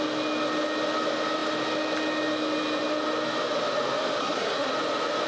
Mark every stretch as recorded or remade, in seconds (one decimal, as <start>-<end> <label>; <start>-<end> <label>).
0.0-4.2 recorded; 4.2-4.7 remade; 4.7-5.3 recorded